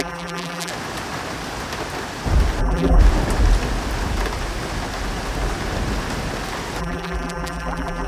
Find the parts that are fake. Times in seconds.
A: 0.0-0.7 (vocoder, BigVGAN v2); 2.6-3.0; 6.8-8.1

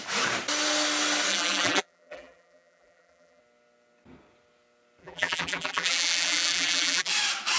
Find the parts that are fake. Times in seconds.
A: 1.3-3.4 (vocoder, BigVGAN v2); 5.0-7.1